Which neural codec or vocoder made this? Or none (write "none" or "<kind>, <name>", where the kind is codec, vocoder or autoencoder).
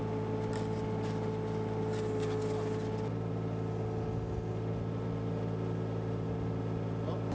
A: none